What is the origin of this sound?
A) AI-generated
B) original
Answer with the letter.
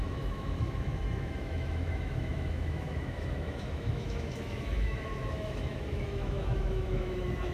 A